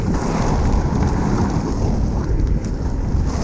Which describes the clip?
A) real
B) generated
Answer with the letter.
A